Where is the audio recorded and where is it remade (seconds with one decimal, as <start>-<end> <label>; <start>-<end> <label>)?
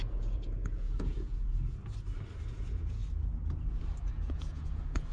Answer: 0.0-1.5 remade; 1.5-2.5 recorded; 2.5-3.0 remade; 3.0-4.1 recorded; 4.1-5.1 remade